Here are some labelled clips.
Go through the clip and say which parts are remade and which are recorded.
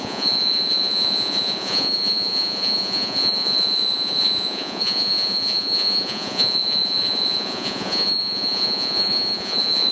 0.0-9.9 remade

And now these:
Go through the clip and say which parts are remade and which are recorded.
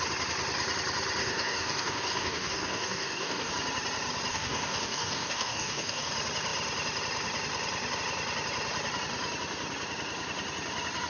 0.0-1.2 recorded; 1.2-3.5 remade; 3.5-4.3 recorded; 4.3-6.1 remade; 6.1-11.1 recorded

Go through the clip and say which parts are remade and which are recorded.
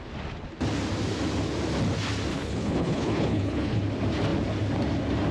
0.0-2.3 recorded; 2.3-3.8 remade; 3.8-5.3 recorded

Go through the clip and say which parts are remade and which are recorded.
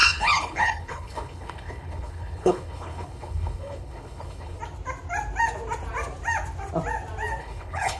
0.0-4.6 remade; 4.6-7.4 recorded; 7.4-8.0 remade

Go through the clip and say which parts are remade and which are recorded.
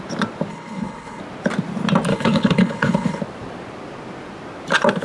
0.0-0.5 recorded; 0.5-1.2 remade; 1.2-2.1 recorded; 2.1-3.2 remade; 3.2-5.0 recorded